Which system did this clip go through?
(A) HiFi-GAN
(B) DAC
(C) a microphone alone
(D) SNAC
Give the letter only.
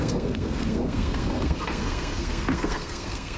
D